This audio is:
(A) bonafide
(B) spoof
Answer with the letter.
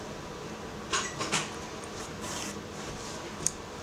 A